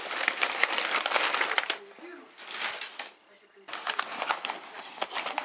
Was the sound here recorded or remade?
recorded